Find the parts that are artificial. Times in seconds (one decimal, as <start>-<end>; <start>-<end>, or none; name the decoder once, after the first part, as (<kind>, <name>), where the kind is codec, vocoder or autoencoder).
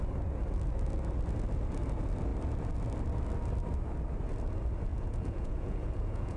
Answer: 4.9-6.4 (vocoder, Vocos)